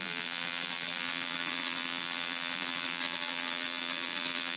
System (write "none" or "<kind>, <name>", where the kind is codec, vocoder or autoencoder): vocoder, BigVGAN v2